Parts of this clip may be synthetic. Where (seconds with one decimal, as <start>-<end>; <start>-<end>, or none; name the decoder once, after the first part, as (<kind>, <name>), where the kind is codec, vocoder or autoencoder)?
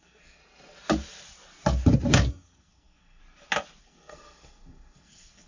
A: 0.0-0.4 (codec, SNAC); 2.3-3.2; 3.8-5.5